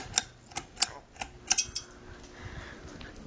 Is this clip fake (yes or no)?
no